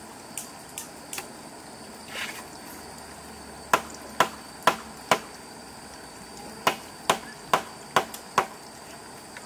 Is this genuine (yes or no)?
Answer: yes